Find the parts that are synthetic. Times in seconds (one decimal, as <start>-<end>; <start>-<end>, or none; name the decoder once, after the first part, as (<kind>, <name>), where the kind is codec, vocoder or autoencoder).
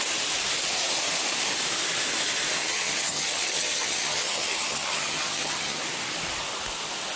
2.6-5.8 (vocoder, HiFi-GAN)